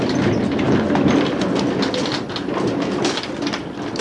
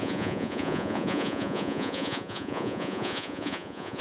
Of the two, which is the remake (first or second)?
second